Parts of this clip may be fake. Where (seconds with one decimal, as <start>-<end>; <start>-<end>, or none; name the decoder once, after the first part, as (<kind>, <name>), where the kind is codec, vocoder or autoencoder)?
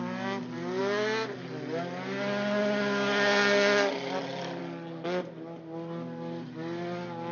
none